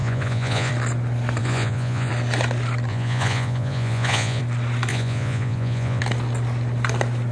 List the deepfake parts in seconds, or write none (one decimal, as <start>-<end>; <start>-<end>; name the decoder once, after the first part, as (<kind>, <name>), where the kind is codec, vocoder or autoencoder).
0.0-0.7 (vocoder, Vocos); 1.4-2.1; 2.9-4.4; 4.9-6.0